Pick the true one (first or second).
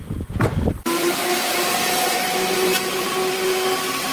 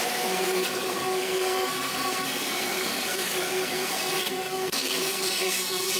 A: first